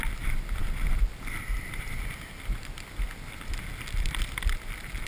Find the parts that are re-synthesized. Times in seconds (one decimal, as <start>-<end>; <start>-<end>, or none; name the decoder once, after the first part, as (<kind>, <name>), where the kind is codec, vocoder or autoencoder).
none